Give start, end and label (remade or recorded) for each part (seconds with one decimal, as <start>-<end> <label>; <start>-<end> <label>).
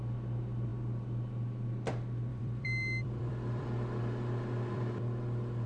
0.0-2.3 recorded; 2.3-5.7 remade